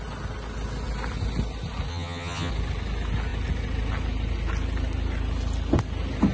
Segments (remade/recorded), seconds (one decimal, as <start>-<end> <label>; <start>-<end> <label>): 0.0-1.9 recorded; 1.9-2.5 remade; 2.5-6.3 recorded